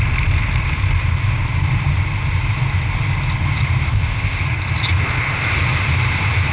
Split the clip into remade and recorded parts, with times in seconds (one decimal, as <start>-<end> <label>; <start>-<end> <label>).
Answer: 0.0-3.9 recorded; 3.9-4.4 remade; 4.4-6.5 recorded